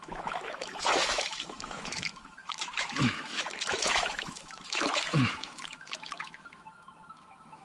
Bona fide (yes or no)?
no